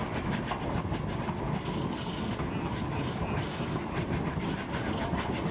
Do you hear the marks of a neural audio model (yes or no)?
no